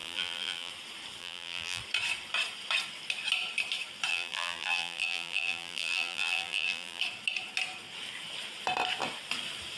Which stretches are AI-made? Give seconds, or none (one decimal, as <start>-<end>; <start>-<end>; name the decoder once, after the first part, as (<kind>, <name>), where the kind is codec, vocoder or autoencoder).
0.0-0.7 (vocoder, BigVGAN v2); 1.2-1.8; 4.1-7.0